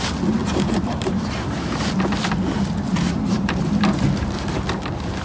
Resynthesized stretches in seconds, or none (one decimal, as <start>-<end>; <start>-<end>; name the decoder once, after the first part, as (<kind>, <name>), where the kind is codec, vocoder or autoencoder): 0.4-1.8 (vocoder, BigVGAN v2); 2.9-3.5